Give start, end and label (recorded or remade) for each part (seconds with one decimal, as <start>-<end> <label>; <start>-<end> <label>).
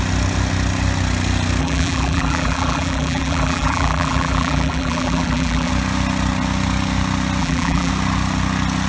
0.0-1.6 recorded; 1.6-5.7 remade; 5.7-7.4 recorded; 7.4-7.9 remade; 7.9-8.9 recorded